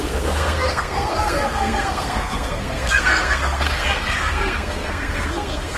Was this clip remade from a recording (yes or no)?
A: yes